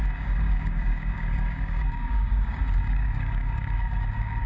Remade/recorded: remade